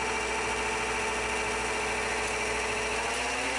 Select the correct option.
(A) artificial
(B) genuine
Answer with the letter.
B